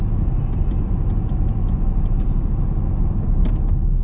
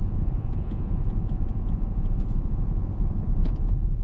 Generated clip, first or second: second